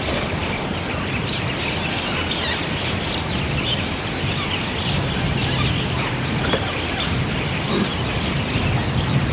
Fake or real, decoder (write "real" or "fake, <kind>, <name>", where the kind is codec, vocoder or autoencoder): real